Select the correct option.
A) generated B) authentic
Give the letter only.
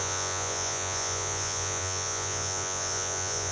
A